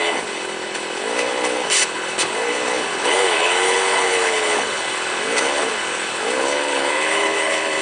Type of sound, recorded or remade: remade